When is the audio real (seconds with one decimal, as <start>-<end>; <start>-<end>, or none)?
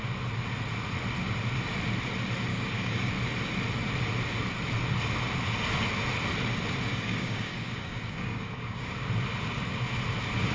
0.0-2.5; 3.1-6.9; 8.9-10.5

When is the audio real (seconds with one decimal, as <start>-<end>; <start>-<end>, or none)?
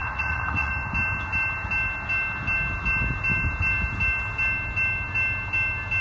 0.7-6.0